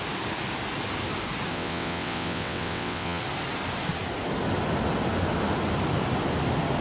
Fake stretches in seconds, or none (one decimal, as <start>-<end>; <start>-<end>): 1.5-3.2

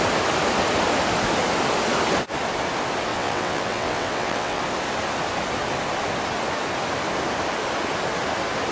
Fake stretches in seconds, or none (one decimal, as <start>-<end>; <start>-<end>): 3.1-4.6

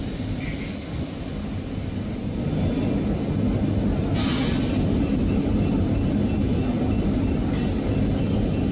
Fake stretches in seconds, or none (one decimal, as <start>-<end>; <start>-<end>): none